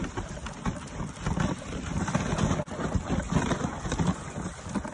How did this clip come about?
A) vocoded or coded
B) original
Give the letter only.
B